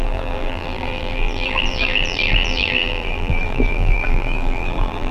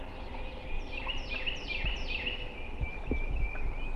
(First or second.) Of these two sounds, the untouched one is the second